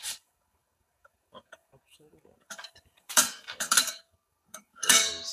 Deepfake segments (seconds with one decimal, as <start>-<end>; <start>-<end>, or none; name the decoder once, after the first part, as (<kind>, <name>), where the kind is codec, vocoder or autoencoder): 0.0-5.3 (codec, DAC)